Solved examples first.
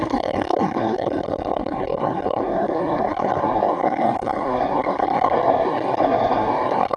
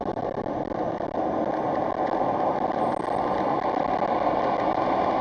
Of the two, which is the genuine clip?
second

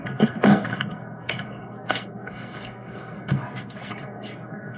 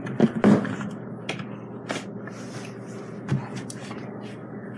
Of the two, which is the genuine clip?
second